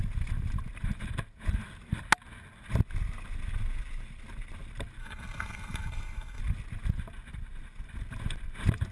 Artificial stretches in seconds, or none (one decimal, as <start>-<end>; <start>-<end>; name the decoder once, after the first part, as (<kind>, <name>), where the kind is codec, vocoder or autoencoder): 5.0-6.4 (codec, SNAC)